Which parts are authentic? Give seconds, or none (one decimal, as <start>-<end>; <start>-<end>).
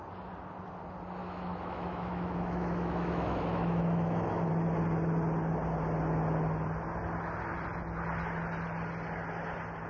0.0-1.2; 4.5-9.9